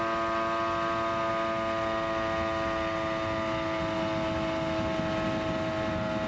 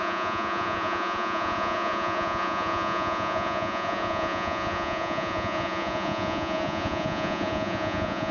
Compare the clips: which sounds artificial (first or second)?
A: second